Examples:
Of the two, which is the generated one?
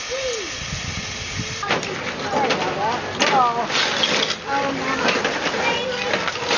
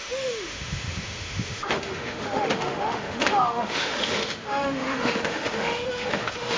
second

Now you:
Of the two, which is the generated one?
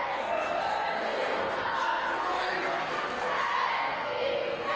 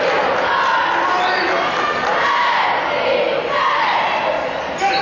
first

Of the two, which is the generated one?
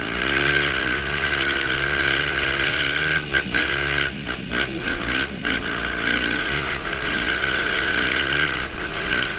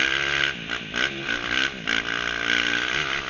first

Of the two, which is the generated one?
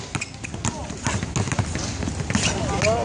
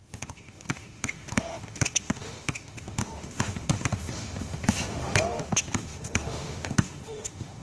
second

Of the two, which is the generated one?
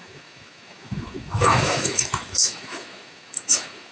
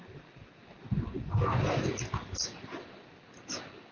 first